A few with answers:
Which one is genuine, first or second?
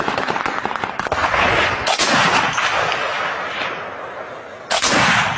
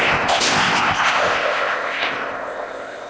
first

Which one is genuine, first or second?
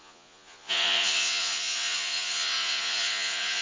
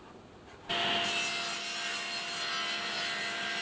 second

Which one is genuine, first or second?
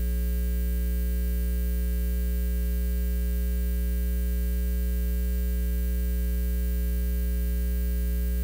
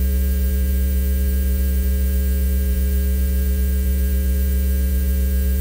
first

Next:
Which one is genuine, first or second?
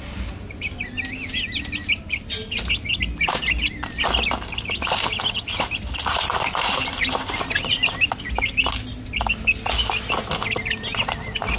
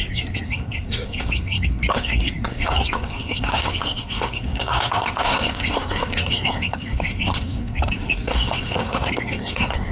first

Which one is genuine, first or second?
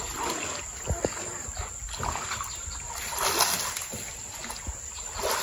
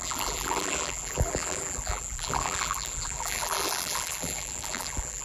first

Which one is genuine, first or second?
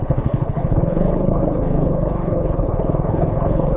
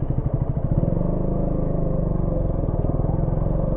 second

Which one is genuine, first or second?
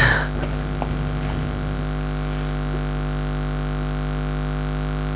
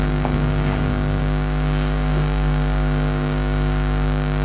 first